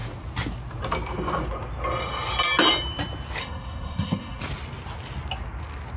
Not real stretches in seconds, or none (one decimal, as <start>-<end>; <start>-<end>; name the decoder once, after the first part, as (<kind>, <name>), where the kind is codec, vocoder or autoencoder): 3.4-4.4 (codec, SNAC)